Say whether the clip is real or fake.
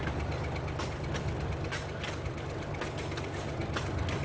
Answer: real